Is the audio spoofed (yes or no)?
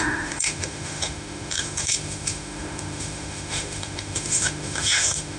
yes